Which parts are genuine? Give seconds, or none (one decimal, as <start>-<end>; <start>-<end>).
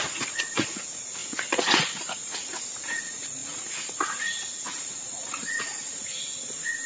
none